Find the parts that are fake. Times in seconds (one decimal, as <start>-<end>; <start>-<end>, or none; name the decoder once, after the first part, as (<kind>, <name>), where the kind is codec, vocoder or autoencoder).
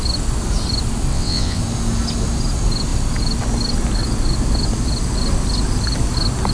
1.1-1.6 (vocoder, WaveNeXt)